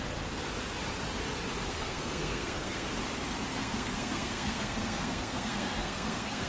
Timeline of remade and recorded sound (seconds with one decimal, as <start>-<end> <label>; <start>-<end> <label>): 0.0-1.7 recorded; 1.7-2.9 remade; 2.9-3.5 recorded; 3.5-6.5 remade